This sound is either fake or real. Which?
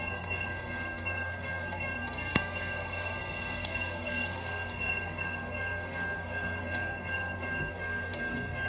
fake